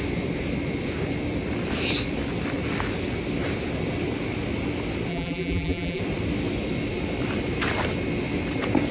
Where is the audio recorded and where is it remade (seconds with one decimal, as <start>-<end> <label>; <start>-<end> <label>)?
0.0-5.1 recorded; 5.1-6.0 remade; 6.0-8.9 recorded